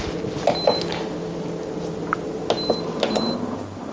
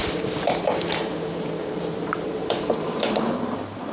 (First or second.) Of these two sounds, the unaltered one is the first